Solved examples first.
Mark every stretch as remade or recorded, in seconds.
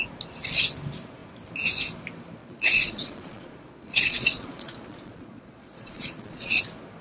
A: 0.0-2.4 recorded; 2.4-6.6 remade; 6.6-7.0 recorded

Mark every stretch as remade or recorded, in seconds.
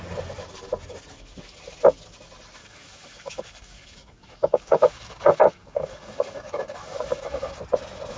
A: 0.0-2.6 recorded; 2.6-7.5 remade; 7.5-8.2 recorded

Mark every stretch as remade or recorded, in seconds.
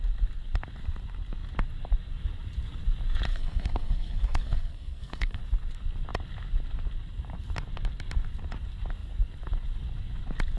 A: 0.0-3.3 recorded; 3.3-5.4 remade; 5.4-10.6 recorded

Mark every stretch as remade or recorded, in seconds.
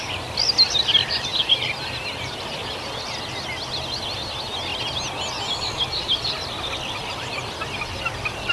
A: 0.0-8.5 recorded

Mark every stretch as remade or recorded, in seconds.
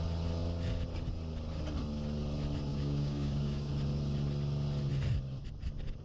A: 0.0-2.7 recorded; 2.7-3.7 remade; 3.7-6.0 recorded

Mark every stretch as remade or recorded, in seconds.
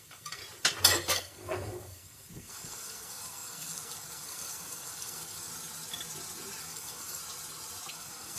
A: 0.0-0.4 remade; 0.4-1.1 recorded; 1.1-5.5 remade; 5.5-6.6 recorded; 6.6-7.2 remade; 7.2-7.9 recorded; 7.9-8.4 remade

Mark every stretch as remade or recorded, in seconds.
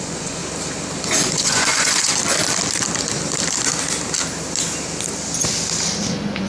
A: 0.0-0.4 remade; 0.4-1.2 recorded; 1.2-2.2 remade; 2.2-6.1 recorded; 6.1-6.5 remade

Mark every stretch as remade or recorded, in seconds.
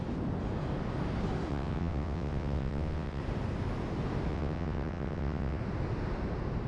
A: 0.0-1.5 recorded; 1.5-3.2 remade; 3.2-4.3 recorded; 4.3-5.6 remade; 5.6-6.7 recorded